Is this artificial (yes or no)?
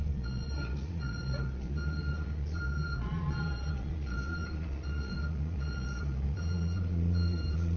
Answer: yes